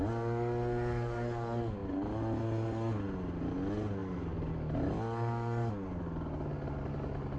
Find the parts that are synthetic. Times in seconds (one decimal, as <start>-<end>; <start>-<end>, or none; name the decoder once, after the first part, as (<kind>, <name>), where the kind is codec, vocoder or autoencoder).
none